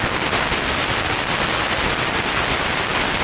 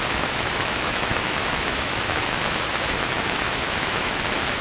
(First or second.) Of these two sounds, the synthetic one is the second